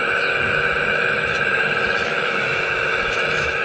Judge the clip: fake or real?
fake